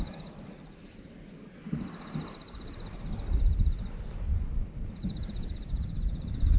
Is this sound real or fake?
real